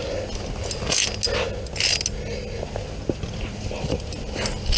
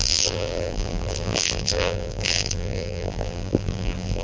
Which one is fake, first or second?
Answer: second